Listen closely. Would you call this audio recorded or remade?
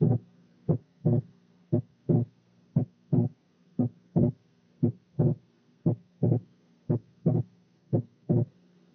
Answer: remade